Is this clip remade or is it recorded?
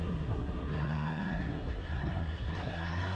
remade